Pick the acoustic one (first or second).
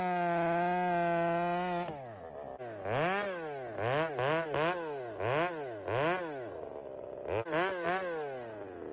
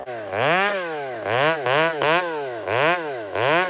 first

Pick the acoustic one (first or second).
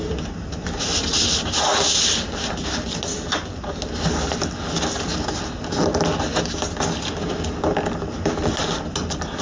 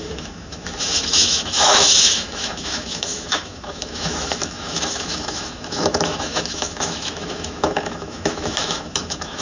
first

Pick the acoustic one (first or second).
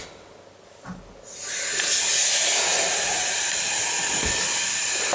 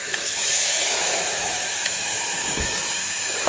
first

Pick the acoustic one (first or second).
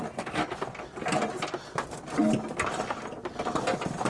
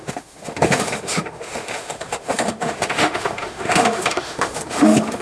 first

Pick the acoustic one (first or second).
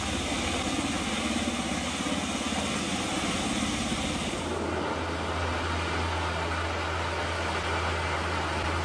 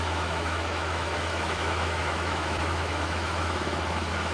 first